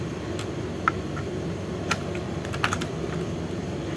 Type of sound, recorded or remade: remade